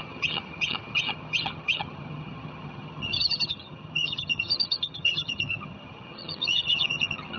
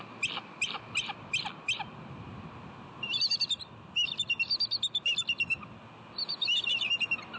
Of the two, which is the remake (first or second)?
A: first